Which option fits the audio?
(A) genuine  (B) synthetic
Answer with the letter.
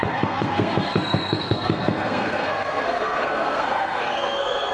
B